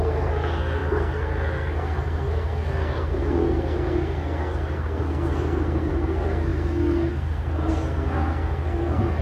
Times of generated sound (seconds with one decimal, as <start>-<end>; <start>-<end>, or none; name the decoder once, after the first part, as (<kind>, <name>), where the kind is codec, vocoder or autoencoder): 0.0-9.2 (codec, SNAC)